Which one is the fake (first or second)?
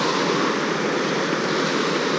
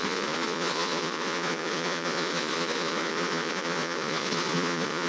second